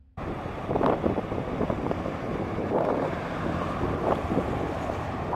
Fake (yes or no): yes